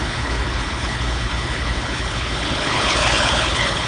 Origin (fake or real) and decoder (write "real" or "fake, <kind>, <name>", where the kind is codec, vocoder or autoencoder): fake, codec, HILCodec